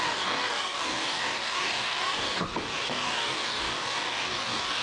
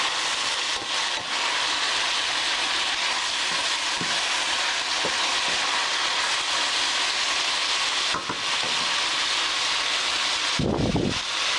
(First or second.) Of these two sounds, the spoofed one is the first